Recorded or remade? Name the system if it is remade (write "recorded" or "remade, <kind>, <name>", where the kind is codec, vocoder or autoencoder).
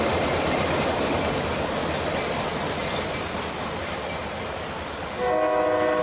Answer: recorded